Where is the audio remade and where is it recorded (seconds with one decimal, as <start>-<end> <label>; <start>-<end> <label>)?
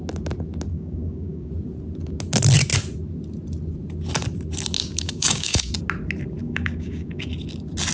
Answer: 0.0-0.7 recorded; 0.7-1.5 remade; 1.5-4.8 recorded; 4.8-5.7 remade; 5.7-6.4 recorded; 6.4-7.3 remade; 7.3-7.9 recorded